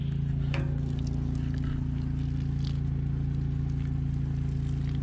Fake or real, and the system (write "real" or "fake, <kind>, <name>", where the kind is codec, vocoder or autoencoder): real